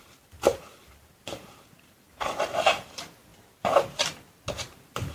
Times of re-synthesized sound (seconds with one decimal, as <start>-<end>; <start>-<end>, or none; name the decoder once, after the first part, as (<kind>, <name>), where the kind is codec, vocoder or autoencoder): 0.0-3.3 (vocoder, BigVGAN v2); 4.5-5.1